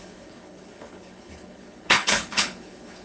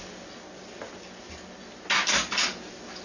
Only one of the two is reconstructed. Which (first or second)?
first